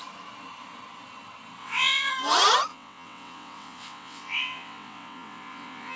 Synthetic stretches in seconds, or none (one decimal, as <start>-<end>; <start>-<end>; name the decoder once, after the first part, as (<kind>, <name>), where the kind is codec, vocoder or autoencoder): 1.6-2.1 (vocoder, WaveNeXt); 2.7-6.0